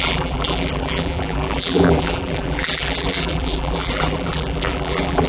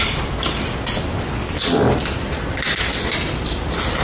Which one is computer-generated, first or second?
first